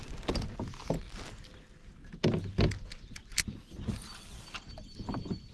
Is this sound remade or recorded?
recorded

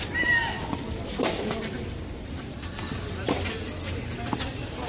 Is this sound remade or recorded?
recorded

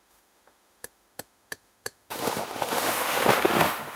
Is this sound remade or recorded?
remade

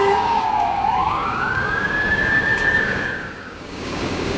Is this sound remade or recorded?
remade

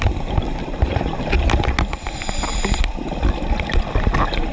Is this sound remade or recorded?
recorded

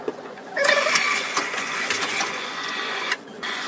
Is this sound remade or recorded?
remade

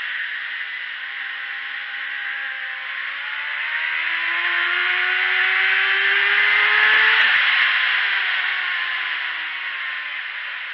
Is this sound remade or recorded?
recorded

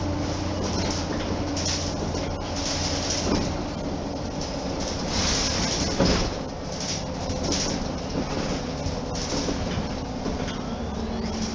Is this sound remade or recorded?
recorded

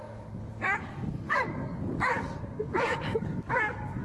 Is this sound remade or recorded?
remade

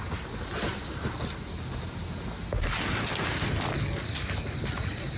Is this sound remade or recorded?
recorded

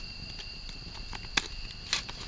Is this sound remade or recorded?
recorded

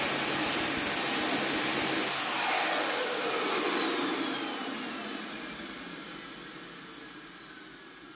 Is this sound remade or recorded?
recorded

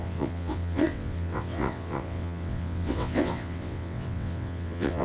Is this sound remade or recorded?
remade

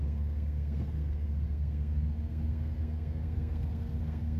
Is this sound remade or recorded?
remade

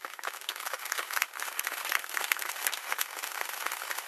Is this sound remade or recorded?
remade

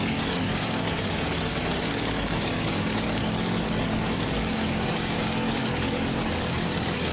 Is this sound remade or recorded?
remade